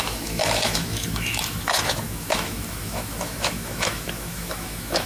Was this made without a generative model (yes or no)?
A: no